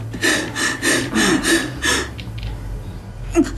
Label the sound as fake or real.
real